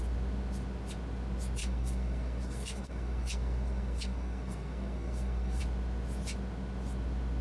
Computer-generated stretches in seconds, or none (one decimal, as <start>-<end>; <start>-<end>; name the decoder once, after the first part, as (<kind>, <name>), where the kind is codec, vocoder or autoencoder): 1.6-5.6 (codec, SNAC)